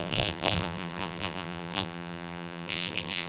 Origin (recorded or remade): remade